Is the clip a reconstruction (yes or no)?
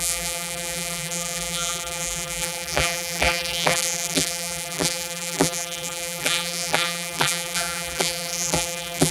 yes